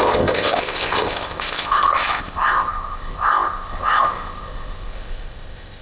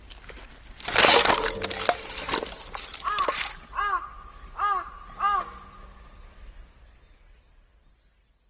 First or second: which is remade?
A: first